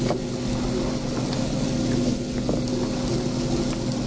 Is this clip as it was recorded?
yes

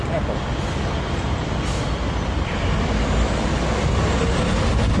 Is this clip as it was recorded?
yes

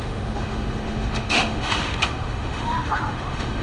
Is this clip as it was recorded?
no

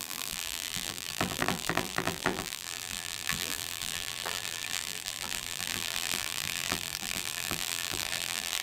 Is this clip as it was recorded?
no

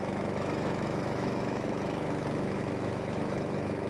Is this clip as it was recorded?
no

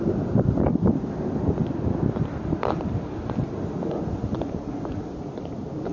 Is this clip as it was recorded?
no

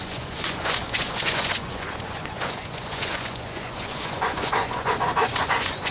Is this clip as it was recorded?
no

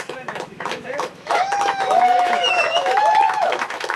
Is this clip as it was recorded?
no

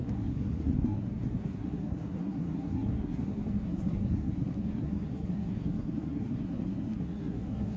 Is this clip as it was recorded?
no